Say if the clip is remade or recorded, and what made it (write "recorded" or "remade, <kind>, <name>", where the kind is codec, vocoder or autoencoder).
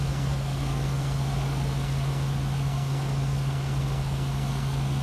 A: remade, codec, SNAC